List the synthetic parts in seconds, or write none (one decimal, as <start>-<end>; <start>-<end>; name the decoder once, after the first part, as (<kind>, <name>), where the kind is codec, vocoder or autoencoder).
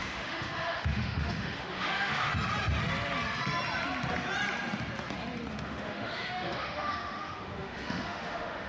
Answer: 0.0-2.3 (autoencoder, DAC-VAE); 5.5-8.7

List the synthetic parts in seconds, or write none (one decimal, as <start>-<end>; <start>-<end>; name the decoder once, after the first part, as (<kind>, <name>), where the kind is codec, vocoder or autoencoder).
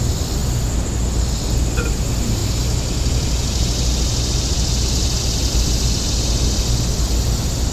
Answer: none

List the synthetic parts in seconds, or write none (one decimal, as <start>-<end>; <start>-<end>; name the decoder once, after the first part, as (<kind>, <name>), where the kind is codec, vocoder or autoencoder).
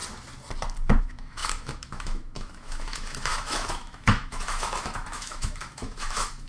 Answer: 1.0-6.5 (autoencoder, DAC-VAE)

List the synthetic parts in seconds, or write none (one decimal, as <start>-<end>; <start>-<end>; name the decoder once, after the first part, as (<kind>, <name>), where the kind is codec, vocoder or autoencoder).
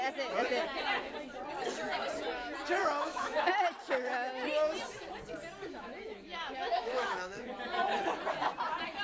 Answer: 2.8-3.5 (autoencoder, DAC-VAE); 5.6-7.5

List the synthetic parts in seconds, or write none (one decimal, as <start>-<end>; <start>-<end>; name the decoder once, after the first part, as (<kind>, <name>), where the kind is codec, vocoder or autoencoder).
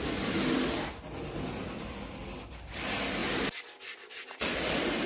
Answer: none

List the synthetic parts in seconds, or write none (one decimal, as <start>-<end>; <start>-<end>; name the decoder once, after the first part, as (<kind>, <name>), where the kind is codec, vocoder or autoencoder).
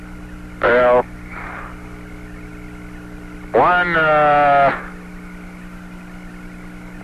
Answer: none